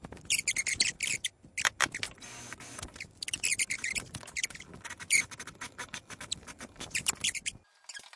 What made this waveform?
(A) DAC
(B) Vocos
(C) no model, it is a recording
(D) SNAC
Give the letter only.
C